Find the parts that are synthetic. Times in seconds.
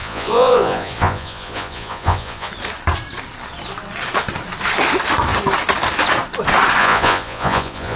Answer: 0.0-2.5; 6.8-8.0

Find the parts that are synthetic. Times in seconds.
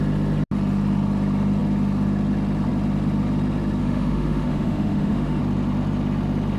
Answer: 3.8-5.4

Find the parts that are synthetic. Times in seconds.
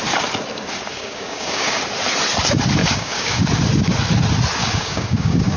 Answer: 0.9-1.8; 2.8-3.4; 4.6-5.6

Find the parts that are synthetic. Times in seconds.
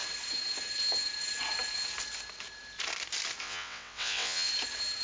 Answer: 3.4-4.5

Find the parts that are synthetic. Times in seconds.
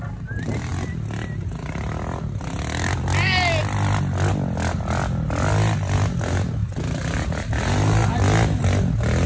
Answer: none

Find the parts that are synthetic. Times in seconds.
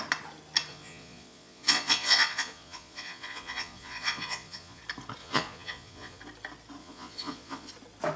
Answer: 0.7-4.8; 5.2-6.2; 6.8-7.7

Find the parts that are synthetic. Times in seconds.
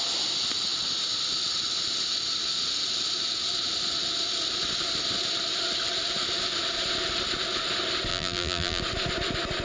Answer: 8.1-8.8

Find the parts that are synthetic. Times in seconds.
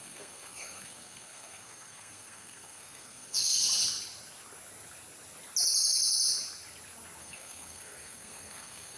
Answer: 0.0-3.6; 7.2-9.0